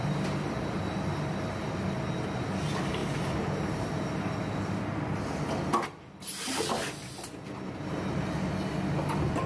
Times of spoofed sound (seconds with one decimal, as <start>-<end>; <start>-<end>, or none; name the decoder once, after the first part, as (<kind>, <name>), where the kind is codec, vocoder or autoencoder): none